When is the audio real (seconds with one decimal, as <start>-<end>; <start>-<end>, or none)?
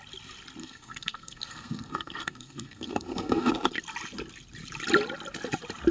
0.0-0.6; 3.5-5.9